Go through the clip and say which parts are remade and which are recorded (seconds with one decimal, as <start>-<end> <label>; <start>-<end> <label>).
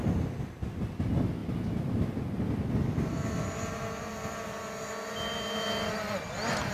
0.0-6.7 recorded